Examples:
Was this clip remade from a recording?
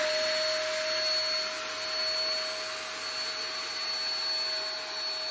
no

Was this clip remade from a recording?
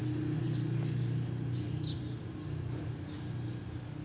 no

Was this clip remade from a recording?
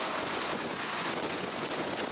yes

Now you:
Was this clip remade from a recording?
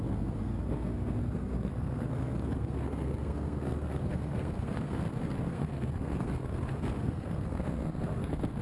yes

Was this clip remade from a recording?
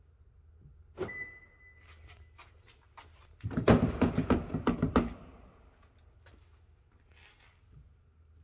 no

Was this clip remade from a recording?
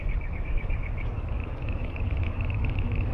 yes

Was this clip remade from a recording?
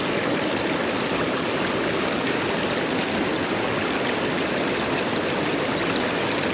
no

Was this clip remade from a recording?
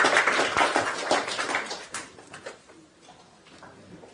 yes